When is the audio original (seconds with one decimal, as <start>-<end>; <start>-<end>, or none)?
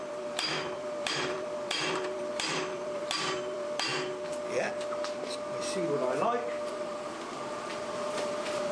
3.9-6.7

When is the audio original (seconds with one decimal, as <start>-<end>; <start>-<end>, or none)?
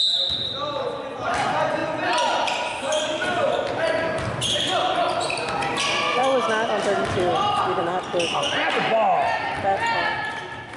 0.0-10.8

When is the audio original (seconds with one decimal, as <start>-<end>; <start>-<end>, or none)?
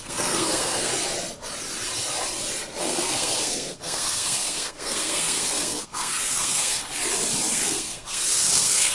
0.9-2.8; 6.8-7.5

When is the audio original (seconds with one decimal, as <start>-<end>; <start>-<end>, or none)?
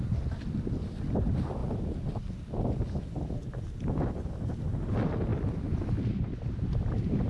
0.0-5.3; 6.0-7.3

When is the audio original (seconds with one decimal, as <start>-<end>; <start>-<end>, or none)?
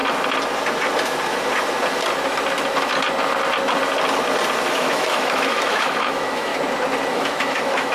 0.0-4.7; 6.5-7.1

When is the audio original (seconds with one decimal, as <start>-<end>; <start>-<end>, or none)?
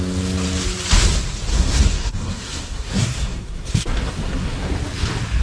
0.0-1.5; 4.7-5.4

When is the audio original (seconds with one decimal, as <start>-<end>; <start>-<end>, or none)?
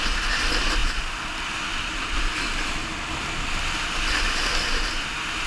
0.0-5.5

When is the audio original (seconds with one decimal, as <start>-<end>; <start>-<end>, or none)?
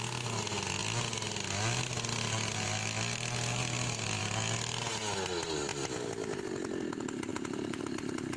0.0-7.3; 7.8-8.4